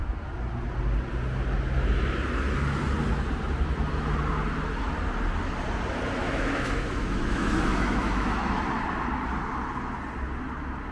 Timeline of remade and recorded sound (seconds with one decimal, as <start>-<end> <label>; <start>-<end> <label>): 0.0-6.2 recorded; 6.2-8.6 remade; 8.6-10.9 recorded